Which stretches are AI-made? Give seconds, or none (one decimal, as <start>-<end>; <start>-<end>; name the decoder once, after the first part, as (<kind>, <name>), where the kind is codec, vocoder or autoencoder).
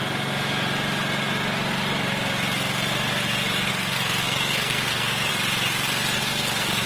3.7-5.3 (codec, SNAC); 6.2-6.9